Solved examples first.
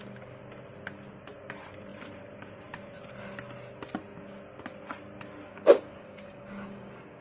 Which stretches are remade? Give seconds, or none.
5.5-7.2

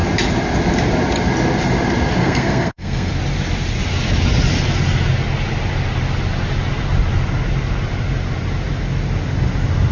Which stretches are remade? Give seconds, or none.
2.2-3.1

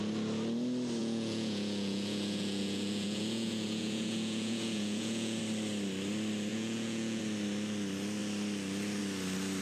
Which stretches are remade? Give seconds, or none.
1.0-5.4; 6.5-7.2

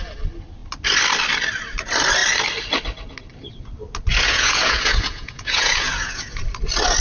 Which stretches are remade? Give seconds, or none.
4.1-6.4

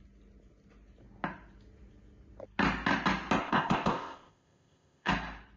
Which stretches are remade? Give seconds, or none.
3.4-5.1